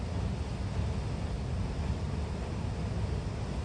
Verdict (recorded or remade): recorded